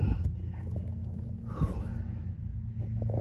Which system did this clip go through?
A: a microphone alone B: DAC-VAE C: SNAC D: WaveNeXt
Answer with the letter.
B